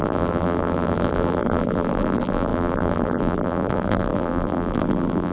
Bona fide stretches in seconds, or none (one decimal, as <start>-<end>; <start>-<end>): none